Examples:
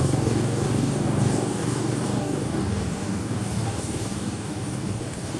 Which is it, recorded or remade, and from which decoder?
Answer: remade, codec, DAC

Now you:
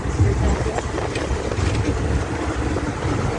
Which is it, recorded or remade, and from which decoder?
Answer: recorded